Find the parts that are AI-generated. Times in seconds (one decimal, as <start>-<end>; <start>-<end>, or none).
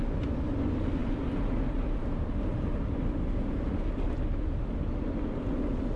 none